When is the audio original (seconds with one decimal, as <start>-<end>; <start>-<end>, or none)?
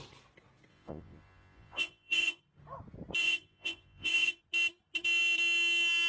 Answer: 0.0-0.7; 2.4-3.2; 4.4-6.1